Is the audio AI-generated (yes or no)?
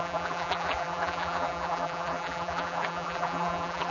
yes